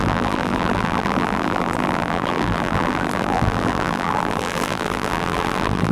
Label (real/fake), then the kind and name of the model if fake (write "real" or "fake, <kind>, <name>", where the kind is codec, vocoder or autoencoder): fake, vocoder, BigVGAN v2